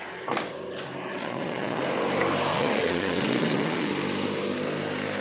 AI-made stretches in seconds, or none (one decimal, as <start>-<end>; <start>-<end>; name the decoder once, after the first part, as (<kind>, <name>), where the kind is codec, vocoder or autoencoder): 1.2-1.8 (vocoder, Vocos); 2.5-3.9